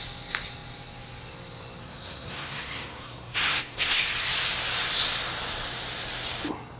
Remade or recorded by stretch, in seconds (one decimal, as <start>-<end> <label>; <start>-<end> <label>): 0.0-1.8 recorded; 1.8-4.0 remade; 4.0-6.8 recorded